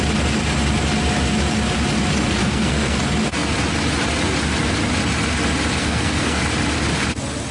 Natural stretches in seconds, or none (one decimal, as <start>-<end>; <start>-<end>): 0.0-2.4; 3.0-5.8; 6.4-7.5